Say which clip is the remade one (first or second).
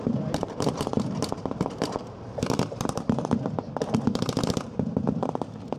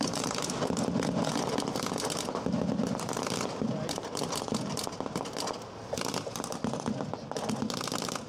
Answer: first